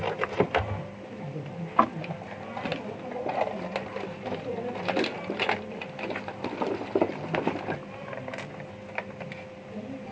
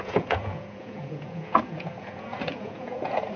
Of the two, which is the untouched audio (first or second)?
first